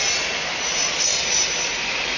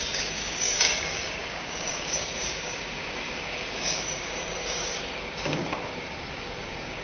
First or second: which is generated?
second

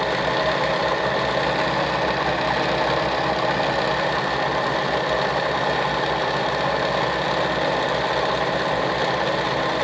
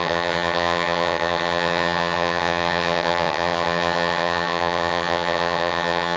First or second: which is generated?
second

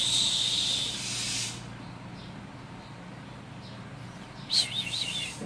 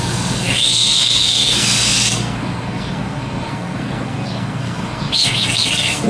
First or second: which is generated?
second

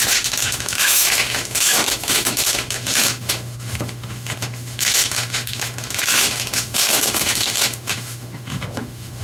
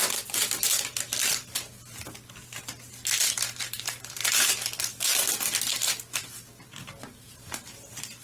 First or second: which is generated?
first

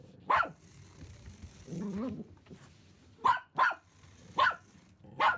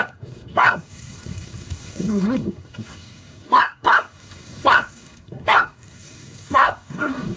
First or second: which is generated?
second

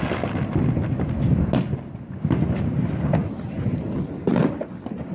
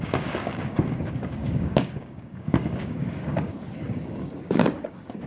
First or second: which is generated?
second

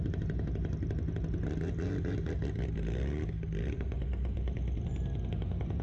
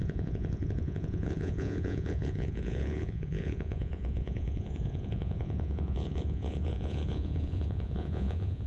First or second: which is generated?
second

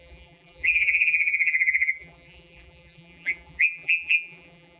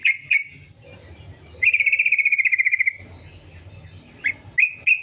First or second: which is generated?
first